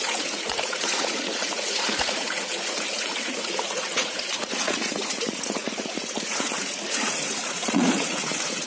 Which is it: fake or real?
fake